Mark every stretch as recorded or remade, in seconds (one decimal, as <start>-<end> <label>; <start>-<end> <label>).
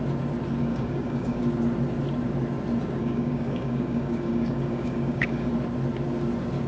0.0-0.6 recorded; 0.6-1.4 remade; 1.4-3.0 recorded; 3.0-5.5 remade; 5.5-6.7 recorded